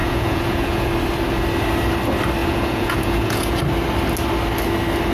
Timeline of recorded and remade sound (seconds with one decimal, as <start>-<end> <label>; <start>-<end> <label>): 0.0-0.9 remade; 0.9-2.4 recorded; 2.4-3.6 remade; 3.6-5.1 recorded